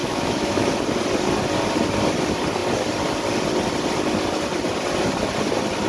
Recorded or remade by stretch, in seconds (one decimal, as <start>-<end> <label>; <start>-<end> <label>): 0.0-0.7 remade; 0.7-5.9 recorded